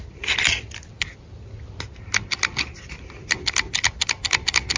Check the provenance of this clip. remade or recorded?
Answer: recorded